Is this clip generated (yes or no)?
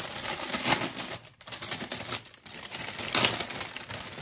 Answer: yes